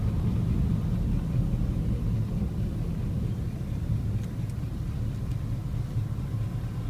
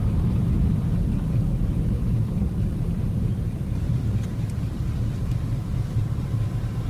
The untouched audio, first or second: first